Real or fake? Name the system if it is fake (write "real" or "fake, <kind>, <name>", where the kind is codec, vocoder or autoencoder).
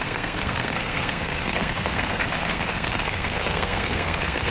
fake, codec, SNAC